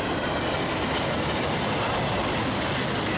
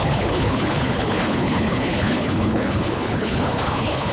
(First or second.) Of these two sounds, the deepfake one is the second